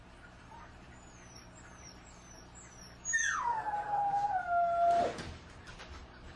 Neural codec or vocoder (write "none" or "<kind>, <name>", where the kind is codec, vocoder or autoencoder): vocoder, BigVGAN v2